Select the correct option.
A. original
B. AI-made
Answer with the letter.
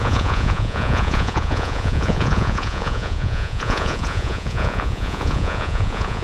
B